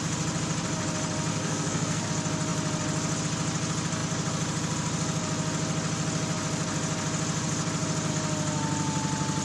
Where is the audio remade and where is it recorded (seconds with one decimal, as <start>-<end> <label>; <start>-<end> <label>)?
0.0-1.3 recorded; 1.3-2.1 remade; 2.1-9.4 recorded